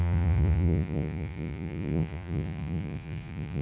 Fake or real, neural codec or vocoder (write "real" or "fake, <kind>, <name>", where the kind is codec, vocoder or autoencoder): fake, vocoder, Vocos